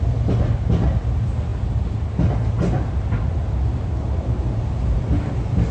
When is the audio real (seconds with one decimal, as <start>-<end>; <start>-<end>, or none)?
0.0-5.7